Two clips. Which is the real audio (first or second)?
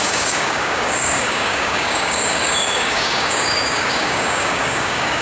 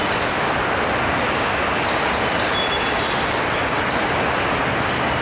second